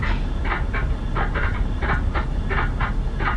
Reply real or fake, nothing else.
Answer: real